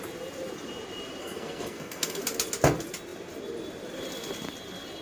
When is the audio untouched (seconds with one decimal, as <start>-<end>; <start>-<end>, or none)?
0.0-1.2; 2.2-5.0